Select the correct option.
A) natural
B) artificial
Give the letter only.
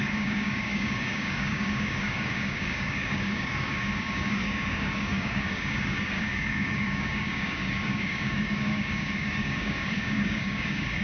B